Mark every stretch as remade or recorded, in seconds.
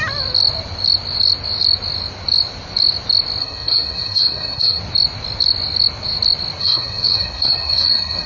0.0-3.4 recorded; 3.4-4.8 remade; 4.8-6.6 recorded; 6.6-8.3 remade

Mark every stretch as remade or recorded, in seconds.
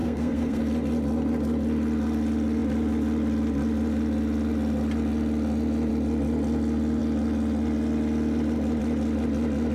0.0-0.6 remade; 0.6-9.7 recorded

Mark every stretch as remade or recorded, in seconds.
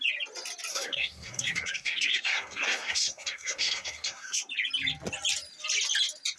0.0-0.7 recorded; 0.7-4.5 remade; 4.5-6.4 recorded